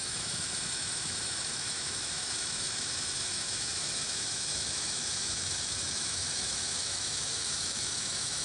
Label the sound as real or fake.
fake